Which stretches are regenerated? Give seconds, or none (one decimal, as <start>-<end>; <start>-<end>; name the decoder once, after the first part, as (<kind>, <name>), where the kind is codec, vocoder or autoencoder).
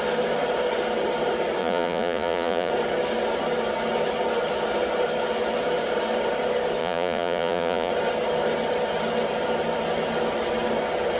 1.6-2.7 (vocoder, Vocos); 6.8-7.9